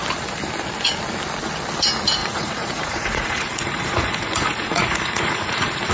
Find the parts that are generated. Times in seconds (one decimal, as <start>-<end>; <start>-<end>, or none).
2.2-5.9